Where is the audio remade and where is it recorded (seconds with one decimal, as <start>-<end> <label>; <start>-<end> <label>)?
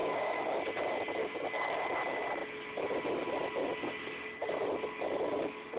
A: 0.0-0.6 remade; 0.6-1.2 recorded; 1.2-2.0 remade; 2.0-5.8 recorded